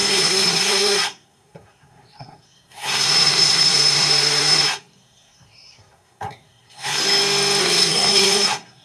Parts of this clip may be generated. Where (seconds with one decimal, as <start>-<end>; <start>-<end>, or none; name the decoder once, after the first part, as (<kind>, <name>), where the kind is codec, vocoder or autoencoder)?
0.0-7.0 (codec, SNAC); 7.6-8.8